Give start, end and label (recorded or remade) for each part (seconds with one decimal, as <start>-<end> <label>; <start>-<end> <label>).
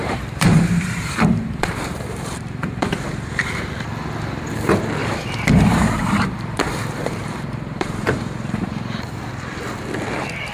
0.0-3.7 remade; 3.7-5.0 recorded; 5.0-9.3 remade; 9.3-10.5 recorded